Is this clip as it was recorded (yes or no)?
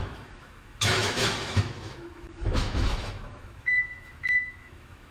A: no